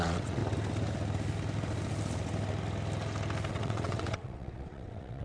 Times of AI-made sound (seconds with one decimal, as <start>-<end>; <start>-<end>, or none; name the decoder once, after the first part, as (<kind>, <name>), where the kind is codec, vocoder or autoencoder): 0.0-0.4 (vocoder, WaveNeXt); 3.5-5.2